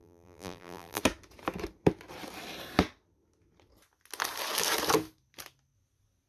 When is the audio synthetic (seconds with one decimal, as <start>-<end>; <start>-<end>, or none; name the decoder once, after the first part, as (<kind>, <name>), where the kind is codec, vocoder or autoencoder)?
0.0-1.0 (vocoder, BigVGAN v2)